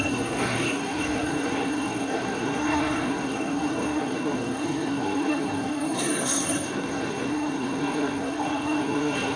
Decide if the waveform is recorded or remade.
remade